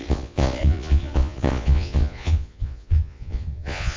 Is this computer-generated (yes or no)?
yes